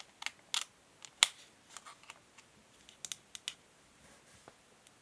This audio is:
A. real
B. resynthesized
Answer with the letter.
A